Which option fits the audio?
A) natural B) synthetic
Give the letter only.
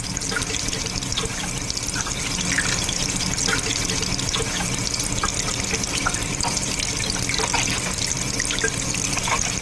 A